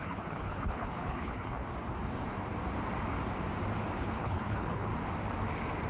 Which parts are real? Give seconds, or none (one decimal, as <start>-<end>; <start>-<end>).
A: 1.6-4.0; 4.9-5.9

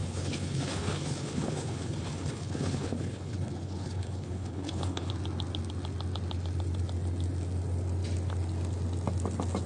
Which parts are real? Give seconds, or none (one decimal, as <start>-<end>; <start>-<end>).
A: 5.1-9.7

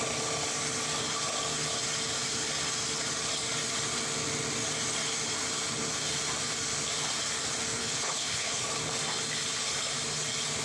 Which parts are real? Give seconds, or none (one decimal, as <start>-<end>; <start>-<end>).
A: 0.0-7.8; 8.6-10.6